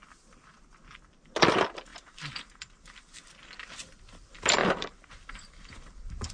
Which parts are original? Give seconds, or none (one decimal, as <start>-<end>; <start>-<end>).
0.0-1.9; 3.2-4.6